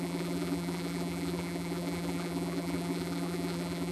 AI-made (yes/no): yes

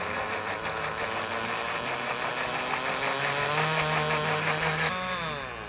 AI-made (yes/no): no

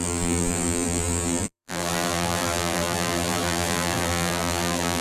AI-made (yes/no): yes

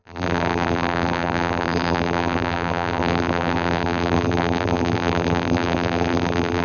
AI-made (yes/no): yes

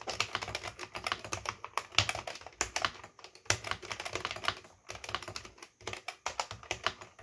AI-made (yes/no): no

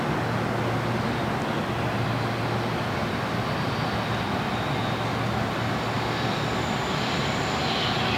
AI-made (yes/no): no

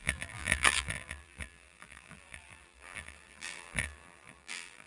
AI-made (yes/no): yes